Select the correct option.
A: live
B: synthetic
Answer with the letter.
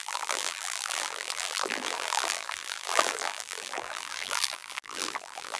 B